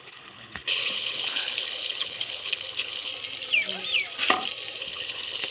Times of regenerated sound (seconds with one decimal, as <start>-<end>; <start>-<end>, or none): 0.0-3.1; 4.8-5.5